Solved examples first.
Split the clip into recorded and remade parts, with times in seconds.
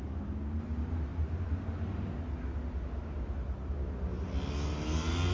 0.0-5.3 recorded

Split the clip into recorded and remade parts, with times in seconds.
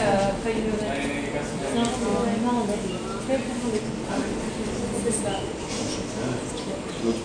0.0-7.2 recorded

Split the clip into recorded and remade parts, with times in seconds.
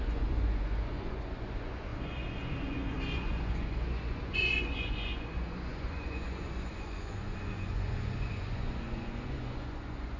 0.0-10.2 remade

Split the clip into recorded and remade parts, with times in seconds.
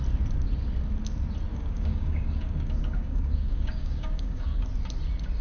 0.0-1.5 recorded; 1.5-4.7 remade; 4.7-5.4 recorded